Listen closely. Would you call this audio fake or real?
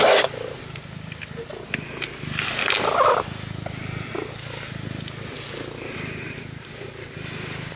real